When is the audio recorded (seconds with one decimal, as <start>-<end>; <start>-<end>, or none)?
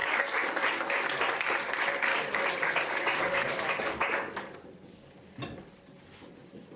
1.2-2.1; 5.1-6.8